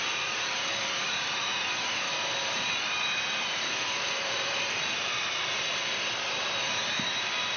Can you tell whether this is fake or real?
fake